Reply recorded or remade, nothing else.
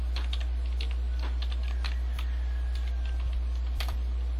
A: remade